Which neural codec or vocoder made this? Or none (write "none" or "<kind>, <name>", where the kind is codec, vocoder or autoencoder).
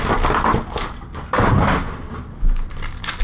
none